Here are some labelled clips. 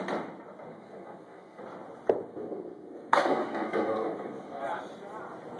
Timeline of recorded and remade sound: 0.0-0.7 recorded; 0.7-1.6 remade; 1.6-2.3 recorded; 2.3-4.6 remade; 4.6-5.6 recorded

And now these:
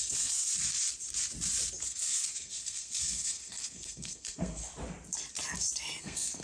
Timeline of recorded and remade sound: 0.0-0.5 remade; 0.5-1.8 recorded; 1.8-4.6 remade; 4.6-6.0 recorded; 6.0-6.4 remade

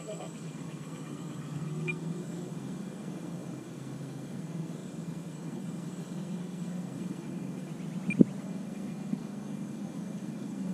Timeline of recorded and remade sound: 0.0-7.7 remade; 7.7-8.4 recorded; 8.4-10.7 remade